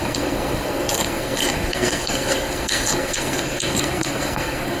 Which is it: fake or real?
fake